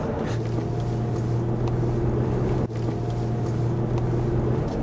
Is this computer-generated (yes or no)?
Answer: no